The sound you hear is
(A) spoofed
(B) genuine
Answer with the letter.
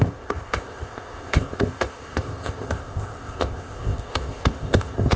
A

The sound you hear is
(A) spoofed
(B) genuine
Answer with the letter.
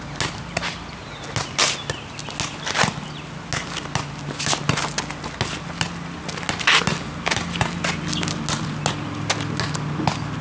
B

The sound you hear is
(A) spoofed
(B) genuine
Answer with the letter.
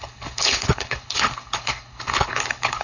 A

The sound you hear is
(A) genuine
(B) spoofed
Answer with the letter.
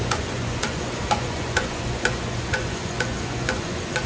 B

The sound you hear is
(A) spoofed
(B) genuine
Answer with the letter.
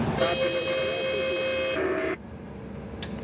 B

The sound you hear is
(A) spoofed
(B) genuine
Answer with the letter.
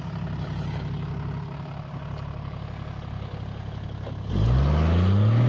B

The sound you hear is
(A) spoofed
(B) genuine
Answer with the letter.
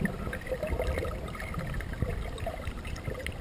A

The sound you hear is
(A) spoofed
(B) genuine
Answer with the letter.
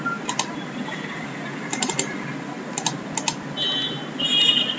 B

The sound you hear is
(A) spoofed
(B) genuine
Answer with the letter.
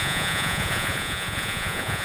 A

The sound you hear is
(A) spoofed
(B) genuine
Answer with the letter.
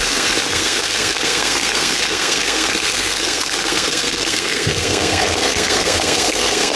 A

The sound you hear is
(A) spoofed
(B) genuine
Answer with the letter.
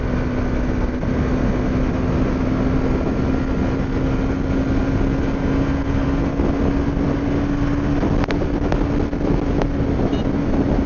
B